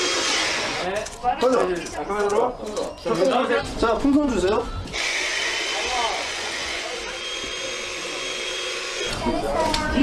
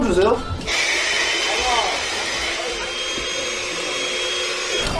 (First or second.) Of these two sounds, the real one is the second